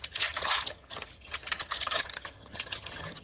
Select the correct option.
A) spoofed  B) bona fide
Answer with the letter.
A